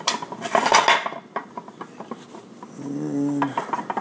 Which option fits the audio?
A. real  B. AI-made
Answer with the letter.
A